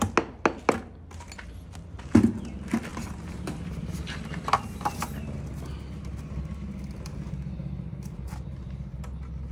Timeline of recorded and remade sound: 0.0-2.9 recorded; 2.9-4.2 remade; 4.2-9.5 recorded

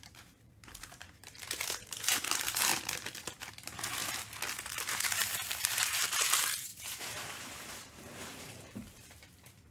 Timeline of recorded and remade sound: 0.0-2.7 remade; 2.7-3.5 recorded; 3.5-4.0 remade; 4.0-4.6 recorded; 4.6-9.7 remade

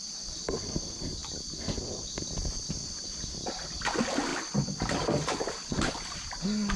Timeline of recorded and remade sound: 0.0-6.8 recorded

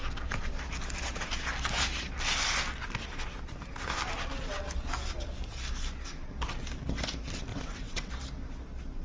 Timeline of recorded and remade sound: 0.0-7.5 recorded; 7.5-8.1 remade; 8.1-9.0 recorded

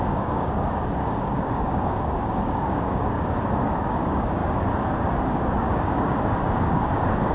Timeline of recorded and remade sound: 0.0-7.3 remade